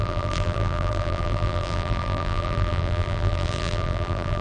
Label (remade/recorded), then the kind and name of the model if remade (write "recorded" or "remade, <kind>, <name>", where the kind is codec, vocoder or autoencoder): remade, vocoder, BigVGAN v2